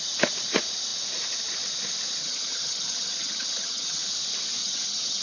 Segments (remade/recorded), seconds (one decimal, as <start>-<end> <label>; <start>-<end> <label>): 0.0-2.2 recorded; 2.2-4.0 remade; 4.0-4.6 recorded; 4.6-5.2 remade